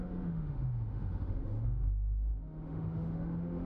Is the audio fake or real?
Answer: fake